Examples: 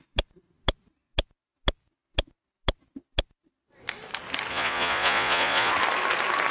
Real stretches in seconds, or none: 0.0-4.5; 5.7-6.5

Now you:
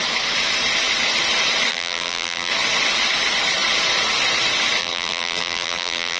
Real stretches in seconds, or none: 0.0-1.7; 2.5-4.8

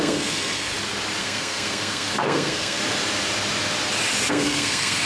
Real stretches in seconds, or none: 0.7-1.2; 2.8-4.3

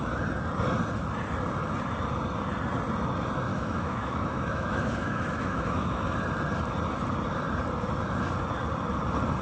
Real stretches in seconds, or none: 0.0-3.5; 6.0-9.4

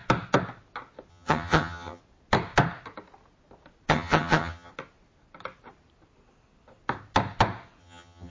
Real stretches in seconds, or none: 0.0-1.1; 2.0-3.9; 4.7-7.8